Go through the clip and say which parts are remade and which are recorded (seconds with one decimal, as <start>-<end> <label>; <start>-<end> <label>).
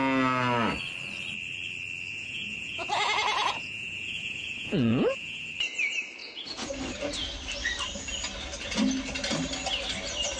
0.0-2.1 recorded; 2.1-5.5 remade; 5.5-6.2 recorded; 6.2-6.7 remade; 6.7-10.4 recorded